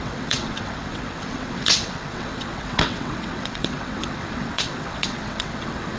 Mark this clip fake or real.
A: fake